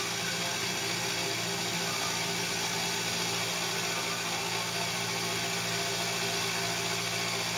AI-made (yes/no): no